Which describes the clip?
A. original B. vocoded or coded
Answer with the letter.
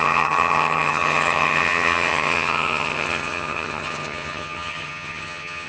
B